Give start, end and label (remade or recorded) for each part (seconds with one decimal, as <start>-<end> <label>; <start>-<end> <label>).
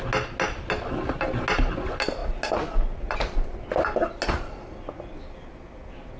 0.0-6.2 recorded